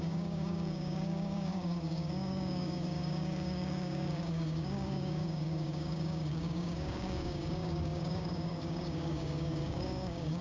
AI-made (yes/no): yes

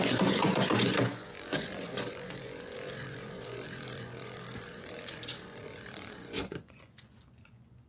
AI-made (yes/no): yes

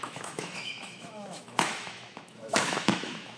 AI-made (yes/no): yes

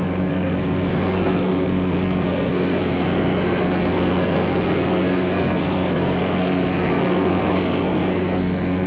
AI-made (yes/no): yes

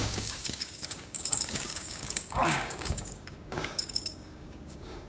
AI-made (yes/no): yes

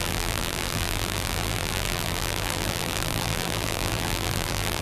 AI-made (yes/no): yes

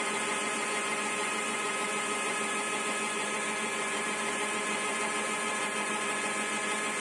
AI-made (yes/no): yes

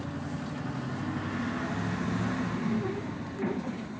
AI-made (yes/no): no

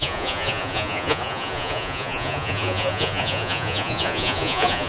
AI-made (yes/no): yes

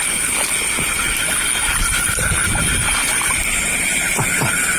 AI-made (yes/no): no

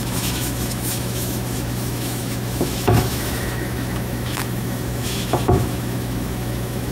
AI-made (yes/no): yes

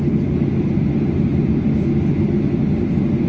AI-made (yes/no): no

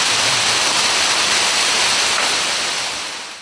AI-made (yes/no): no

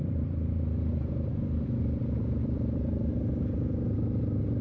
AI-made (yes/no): yes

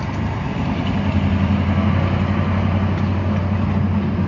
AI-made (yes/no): no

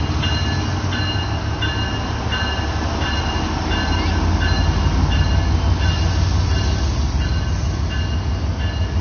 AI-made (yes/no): no